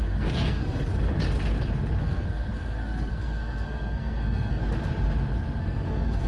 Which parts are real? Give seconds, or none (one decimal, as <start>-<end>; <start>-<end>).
0.9-2.0; 4.6-5.6